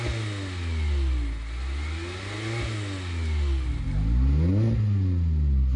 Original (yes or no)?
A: yes